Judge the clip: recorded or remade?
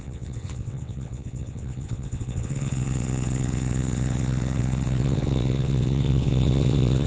remade